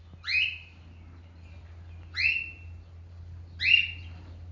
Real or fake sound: real